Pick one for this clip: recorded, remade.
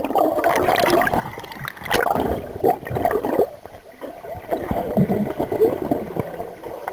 recorded